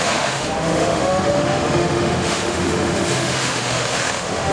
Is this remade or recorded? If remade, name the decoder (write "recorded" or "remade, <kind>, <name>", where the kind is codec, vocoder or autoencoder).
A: remade, autoencoder, DAC-VAE